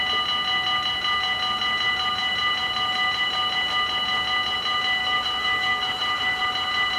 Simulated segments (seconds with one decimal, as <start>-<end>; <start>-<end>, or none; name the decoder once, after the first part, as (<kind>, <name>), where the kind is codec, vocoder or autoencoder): 5.0-6.4 (autoencoder, DAC-VAE)

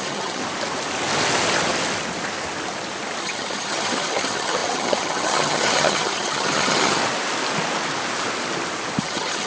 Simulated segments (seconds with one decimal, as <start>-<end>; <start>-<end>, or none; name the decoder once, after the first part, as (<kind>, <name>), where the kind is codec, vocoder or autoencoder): 0.0-0.4 (vocoder, HiFi-GAN); 3.2-7.0; 9.0-9.5

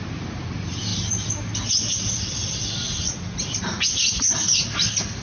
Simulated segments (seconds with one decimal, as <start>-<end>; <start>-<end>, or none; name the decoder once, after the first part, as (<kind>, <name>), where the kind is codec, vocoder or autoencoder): 0.9-2.6 (vocoder, BigVGAN v2)

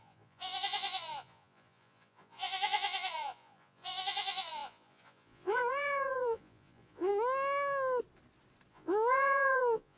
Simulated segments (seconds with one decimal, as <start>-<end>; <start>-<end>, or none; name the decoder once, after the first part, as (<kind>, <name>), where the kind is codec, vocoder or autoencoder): 0.0-7.1 (vocoder, Vocos); 8.7-10.0

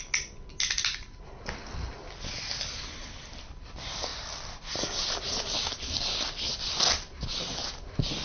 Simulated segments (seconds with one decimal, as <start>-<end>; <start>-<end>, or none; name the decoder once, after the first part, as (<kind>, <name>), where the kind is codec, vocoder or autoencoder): none